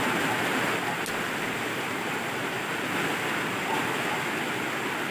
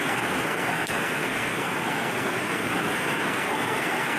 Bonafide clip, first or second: first